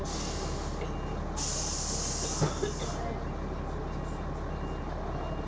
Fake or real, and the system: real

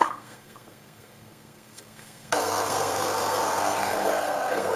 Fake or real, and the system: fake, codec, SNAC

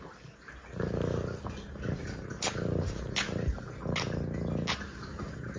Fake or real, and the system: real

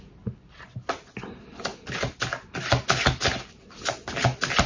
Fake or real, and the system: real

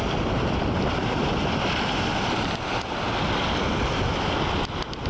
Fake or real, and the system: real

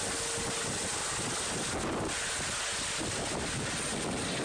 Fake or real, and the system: real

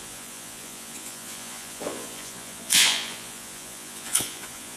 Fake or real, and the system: fake, vocoder, Vocos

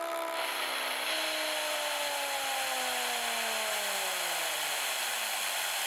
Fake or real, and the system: real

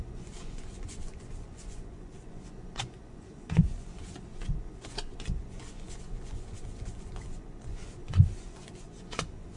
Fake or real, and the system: fake, vocoder, Vocos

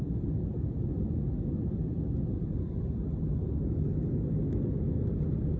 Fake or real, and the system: real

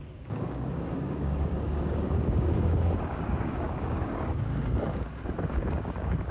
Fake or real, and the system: fake, codec, DAC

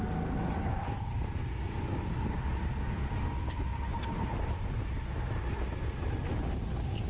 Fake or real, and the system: real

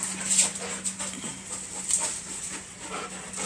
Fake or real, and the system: real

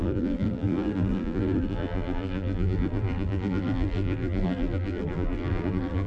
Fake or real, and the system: fake, vocoder, BigVGAN v2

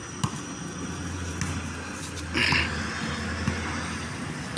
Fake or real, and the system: real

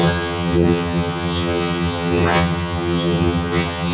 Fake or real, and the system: fake, vocoder, HiFi-GAN